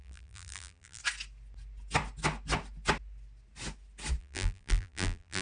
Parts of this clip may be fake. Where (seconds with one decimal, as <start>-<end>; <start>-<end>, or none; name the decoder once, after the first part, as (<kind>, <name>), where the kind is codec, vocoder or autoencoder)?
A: 0.0-1.0 (vocoder, BigVGAN v2); 4.2-5.4